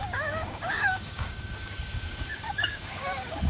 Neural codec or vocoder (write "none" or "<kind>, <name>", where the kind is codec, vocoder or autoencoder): codec, DAC